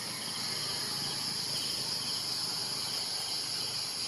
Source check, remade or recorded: recorded